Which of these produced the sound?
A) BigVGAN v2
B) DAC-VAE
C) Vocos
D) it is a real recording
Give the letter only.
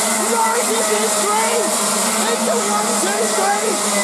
D